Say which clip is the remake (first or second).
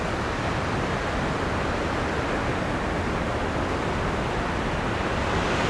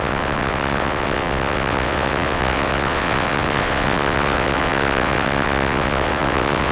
second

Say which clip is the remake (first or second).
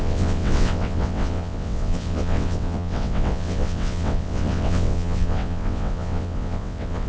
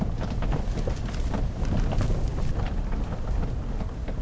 first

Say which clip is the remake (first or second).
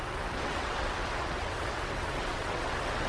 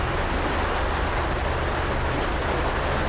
first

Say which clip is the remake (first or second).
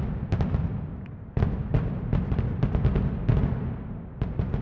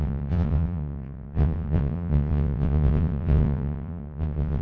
second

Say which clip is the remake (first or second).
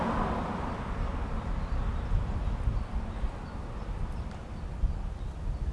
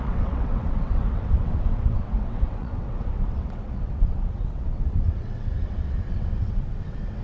second